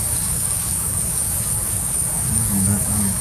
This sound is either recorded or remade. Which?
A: remade